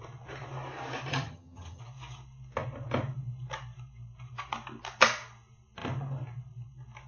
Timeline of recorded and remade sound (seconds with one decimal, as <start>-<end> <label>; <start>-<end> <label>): 0.0-1.1 recorded; 1.1-1.8 remade; 1.8-7.1 recorded